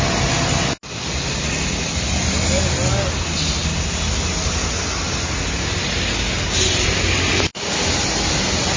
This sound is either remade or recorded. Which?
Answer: recorded